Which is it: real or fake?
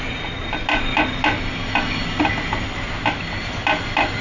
real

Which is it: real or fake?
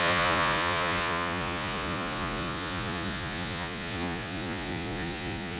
fake